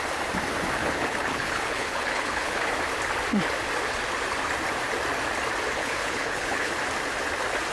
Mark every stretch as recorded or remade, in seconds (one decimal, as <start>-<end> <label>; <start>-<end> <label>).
0.0-0.8 recorded; 0.8-2.7 remade; 2.7-5.8 recorded; 5.8-6.7 remade; 6.7-7.7 recorded